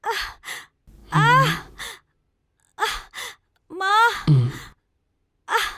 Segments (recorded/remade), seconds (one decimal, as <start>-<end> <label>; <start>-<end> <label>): 0.0-5.8 recorded